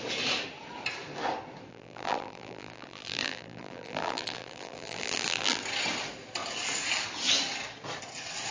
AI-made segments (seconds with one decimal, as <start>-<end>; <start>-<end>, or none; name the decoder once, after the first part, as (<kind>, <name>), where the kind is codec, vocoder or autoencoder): 1.7-5.6 (vocoder, BigVGAN v2)